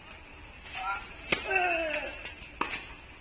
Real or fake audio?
real